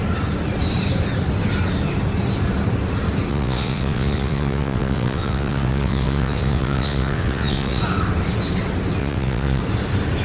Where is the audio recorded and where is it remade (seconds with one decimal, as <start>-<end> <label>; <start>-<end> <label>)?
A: 0.0-3.3 recorded; 3.3-7.8 remade; 7.8-9.0 recorded; 9.0-9.6 remade; 9.6-10.2 recorded